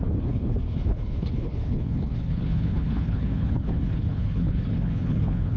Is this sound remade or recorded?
remade